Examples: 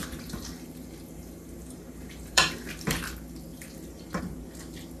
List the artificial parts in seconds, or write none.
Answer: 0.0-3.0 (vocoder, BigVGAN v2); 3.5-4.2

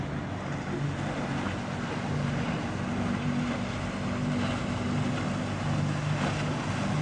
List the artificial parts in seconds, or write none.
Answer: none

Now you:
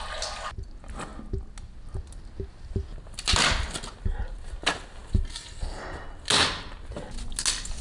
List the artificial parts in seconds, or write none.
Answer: none

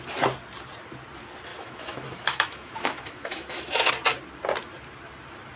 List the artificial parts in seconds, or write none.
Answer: 1.5-3.9 (autoencoder, DAC-VAE)

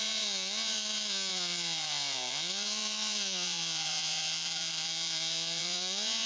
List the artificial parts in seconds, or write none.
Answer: 0.0-6.3 (vocoder, Vocos)

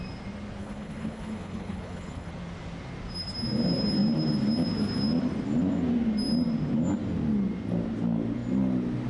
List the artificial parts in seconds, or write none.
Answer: 0.6-2.3 (codec, HILCodec)